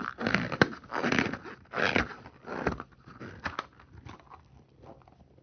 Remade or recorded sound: remade